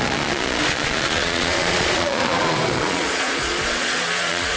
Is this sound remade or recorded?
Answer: remade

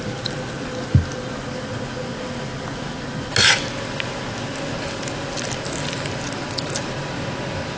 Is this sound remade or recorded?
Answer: recorded